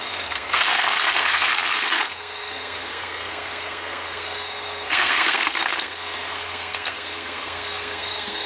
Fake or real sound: fake